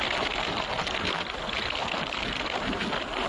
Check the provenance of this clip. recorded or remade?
recorded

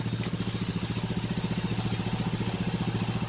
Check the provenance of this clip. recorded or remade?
recorded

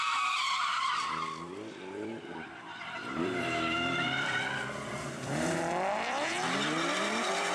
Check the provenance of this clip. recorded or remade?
remade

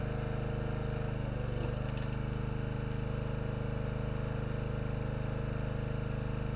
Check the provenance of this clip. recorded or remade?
recorded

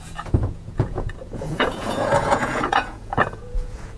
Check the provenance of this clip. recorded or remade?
remade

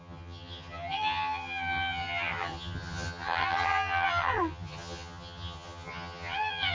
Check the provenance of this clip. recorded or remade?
remade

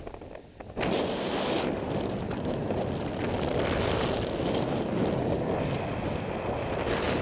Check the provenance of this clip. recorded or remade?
recorded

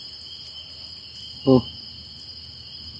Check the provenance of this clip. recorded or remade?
recorded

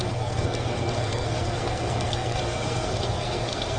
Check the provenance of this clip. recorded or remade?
remade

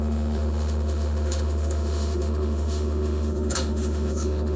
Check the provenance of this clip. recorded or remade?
remade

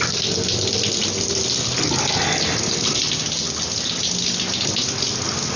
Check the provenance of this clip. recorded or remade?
recorded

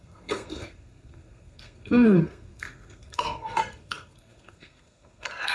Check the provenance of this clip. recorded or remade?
remade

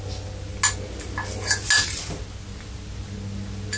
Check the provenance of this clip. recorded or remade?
recorded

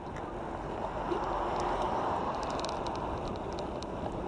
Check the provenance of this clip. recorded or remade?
recorded